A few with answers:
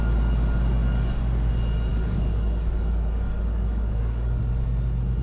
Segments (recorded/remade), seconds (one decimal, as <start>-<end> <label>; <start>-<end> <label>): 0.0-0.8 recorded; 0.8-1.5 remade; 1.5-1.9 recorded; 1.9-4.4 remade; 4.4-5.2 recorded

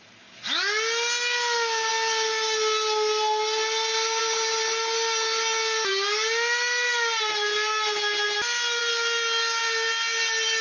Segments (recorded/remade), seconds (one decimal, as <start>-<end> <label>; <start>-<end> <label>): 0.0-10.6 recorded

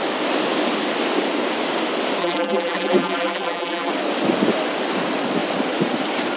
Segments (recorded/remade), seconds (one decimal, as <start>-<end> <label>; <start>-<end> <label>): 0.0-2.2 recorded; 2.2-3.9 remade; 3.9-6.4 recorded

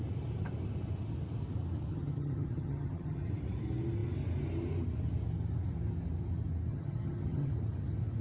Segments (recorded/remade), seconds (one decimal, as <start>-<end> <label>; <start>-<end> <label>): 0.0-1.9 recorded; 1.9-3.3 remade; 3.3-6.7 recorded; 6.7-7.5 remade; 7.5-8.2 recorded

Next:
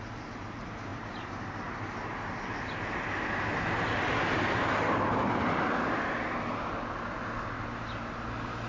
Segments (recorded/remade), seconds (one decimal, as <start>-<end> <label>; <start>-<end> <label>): 0.0-8.7 recorded

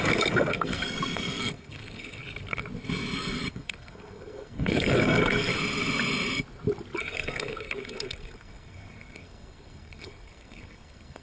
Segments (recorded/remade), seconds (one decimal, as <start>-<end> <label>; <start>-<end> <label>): 0.0-2.2 remade; 2.2-3.5 recorded; 3.5-5.5 remade; 5.5-7.0 recorded; 7.0-11.2 remade

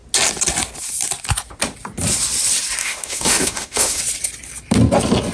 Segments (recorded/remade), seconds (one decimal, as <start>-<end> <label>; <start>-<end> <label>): 0.0-2.8 recorded; 2.8-4.0 remade; 4.0-5.3 recorded